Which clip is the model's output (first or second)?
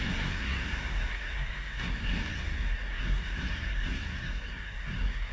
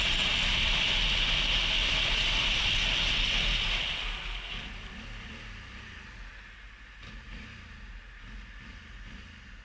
first